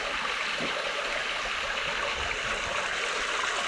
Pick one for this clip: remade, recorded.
recorded